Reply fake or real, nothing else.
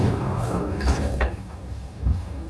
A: fake